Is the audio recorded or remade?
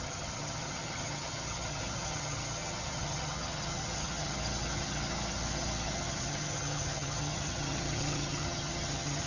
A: remade